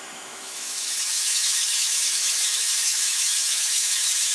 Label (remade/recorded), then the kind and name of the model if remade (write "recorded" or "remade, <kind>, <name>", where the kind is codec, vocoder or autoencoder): remade, autoencoder, DAC-VAE